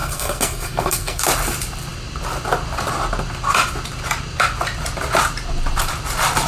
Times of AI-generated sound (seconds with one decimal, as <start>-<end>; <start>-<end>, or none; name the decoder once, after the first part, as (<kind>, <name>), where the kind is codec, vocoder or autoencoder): 0.0-1.2 (codec, SNAC)